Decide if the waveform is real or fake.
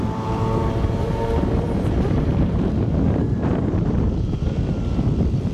fake